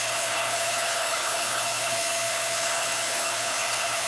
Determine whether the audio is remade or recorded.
remade